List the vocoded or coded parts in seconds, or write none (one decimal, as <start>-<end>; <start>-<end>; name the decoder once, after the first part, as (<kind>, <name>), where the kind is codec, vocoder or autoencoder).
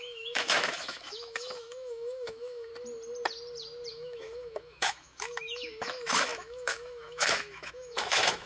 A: 0.0-2.7 (autoencoder, DAC-VAE); 3.9-8.5